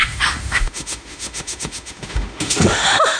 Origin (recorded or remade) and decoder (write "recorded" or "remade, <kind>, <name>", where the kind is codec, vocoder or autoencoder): remade, autoencoder, DAC-VAE